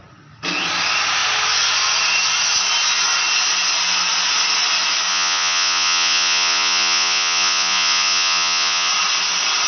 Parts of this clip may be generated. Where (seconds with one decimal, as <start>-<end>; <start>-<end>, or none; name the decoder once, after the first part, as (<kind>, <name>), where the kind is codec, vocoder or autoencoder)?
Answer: 5.1-8.9 (vocoder, Vocos)

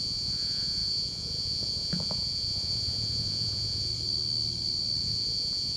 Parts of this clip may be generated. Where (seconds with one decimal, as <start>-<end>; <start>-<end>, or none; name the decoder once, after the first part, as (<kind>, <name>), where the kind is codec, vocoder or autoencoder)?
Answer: 0.0-3.9 (vocoder, Vocos); 5.0-5.8

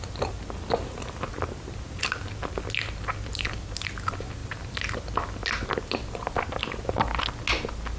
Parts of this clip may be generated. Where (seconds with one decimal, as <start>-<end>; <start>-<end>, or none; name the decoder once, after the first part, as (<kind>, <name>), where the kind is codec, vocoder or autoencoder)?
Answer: none

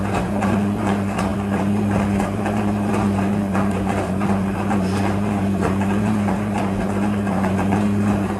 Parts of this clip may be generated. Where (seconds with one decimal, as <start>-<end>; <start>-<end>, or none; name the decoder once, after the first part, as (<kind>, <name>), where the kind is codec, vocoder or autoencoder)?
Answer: 0.0-8.4 (vocoder, Vocos)

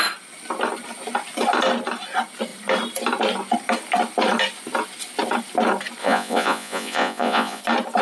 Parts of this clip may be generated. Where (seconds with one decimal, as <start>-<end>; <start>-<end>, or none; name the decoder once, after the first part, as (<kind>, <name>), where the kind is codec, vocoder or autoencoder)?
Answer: 6.0-7.6 (vocoder, Vocos)

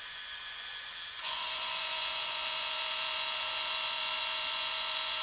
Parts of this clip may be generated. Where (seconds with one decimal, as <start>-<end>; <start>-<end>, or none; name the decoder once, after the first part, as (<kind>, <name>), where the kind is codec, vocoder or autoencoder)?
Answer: 0.0-5.2 (vocoder, Vocos)